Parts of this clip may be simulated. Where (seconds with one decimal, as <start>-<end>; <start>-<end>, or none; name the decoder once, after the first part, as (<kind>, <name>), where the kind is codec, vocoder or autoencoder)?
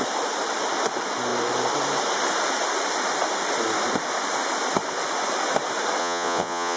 6.0-6.8 (vocoder, Vocos)